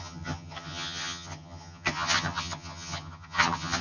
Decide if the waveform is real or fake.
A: fake